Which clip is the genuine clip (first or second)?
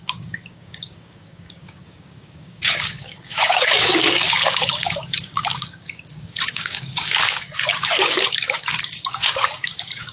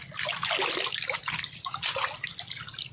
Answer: second